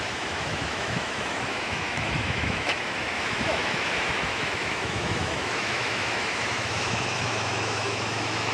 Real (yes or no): no